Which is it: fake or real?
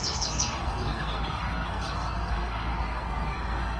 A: fake